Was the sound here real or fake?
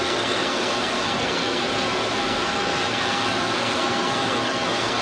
fake